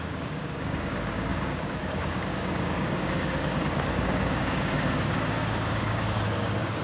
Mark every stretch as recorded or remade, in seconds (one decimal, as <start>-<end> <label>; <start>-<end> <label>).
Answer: 0.0-6.8 remade